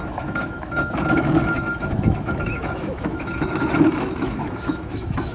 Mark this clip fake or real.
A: fake